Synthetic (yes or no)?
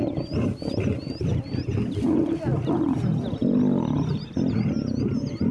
no